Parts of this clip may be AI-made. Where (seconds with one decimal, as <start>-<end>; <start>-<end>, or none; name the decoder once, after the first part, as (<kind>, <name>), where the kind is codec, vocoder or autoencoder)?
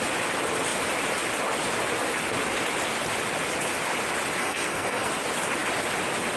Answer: 4.4-5.1 (codec, SNAC)